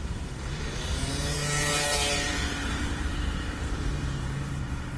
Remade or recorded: remade